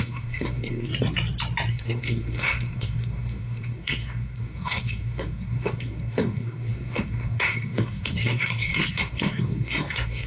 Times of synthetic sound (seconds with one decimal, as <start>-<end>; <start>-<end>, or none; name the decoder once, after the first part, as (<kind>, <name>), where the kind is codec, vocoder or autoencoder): 0.0-0.9 (codec, SNAC); 1.7-10.3